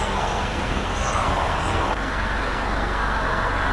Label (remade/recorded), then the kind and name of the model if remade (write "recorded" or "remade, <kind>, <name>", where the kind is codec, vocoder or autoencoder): remade, codec, SNAC